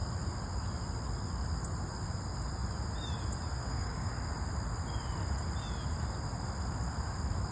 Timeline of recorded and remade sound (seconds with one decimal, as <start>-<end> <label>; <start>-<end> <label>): 0.0-3.6 recorded; 3.6-4.1 remade; 4.1-7.5 recorded